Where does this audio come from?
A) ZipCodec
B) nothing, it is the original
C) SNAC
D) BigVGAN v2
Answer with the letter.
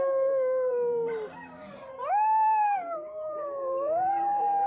D